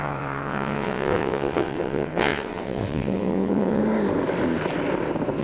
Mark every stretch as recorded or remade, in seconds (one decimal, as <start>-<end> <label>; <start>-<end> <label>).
0.0-3.8 remade; 3.8-5.4 recorded